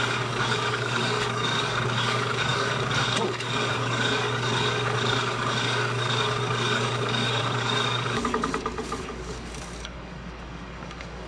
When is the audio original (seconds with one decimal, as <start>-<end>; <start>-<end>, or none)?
none